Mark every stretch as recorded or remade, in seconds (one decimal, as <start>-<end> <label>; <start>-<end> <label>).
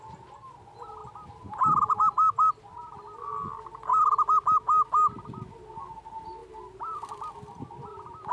0.0-8.3 recorded